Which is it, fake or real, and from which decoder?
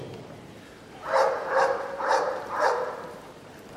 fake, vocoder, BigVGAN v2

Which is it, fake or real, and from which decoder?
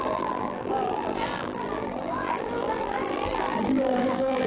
fake, vocoder, BigVGAN v2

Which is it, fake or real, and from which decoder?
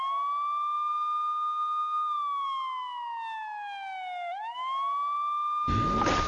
real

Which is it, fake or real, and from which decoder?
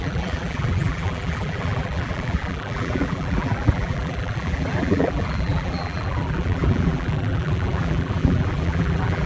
fake, vocoder, BigVGAN v2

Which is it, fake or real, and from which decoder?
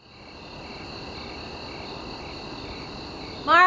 real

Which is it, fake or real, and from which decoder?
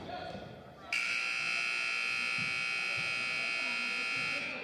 real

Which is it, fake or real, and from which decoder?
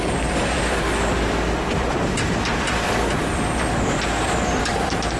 fake, vocoder, BigVGAN v2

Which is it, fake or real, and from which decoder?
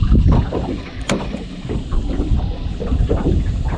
real